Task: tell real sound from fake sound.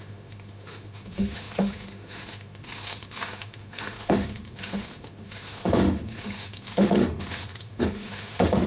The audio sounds fake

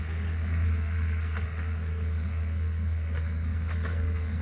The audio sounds fake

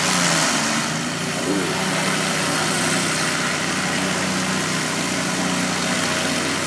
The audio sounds real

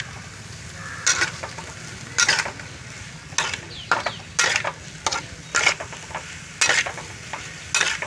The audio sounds real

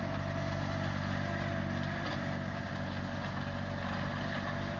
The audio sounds real